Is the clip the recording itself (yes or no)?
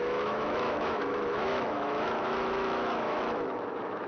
no